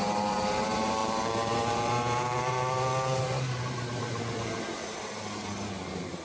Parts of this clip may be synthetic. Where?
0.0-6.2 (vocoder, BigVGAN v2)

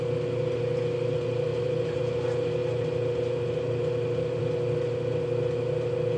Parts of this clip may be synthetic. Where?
1.5-2.0 (vocoder, BigVGAN v2)

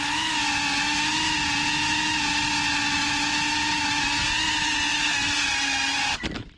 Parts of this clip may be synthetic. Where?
none

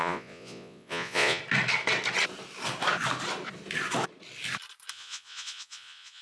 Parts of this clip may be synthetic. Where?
0.0-1.4 (vocoder, Vocos); 4.9-6.2

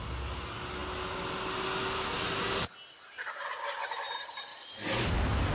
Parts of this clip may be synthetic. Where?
4.5-5.1 (vocoder, BigVGAN v2)

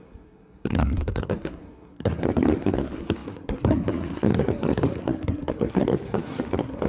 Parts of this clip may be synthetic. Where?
0.0-6.9 (codec, SNAC)

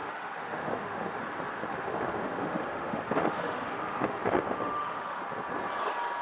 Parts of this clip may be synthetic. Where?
0.0-1.2 (autoencoder, DAC-VAE); 1.7-5.2